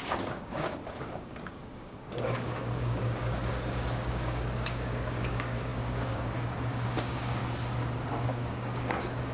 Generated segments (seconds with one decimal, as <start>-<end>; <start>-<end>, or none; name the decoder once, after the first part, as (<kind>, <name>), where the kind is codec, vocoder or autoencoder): 0.0-7.4 (codec, DAC); 8.1-9.3